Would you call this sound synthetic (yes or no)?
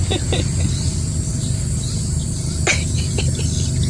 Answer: no